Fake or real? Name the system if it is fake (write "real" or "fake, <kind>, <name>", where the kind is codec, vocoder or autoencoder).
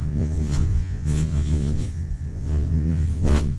fake, vocoder, Vocos